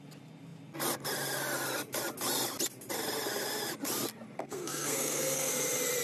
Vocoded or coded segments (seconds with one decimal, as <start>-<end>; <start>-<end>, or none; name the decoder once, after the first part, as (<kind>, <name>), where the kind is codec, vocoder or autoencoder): 4.4-5.5 (codec, SNAC)